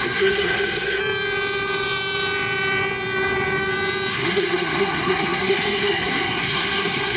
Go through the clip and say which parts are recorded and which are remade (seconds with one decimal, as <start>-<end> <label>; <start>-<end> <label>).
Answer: 0.0-1.0 remade; 1.0-4.1 recorded; 4.1-7.2 remade